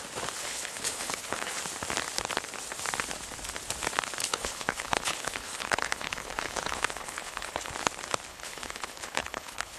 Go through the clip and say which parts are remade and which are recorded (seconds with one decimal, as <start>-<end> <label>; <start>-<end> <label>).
0.0-0.4 recorded; 0.4-1.6 remade; 1.6-4.2 recorded; 4.2-7.7 remade; 7.7-8.3 recorded; 8.3-9.8 remade